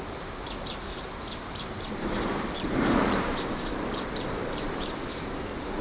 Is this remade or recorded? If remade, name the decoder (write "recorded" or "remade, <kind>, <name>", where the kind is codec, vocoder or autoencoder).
remade, vocoder, BigVGAN v2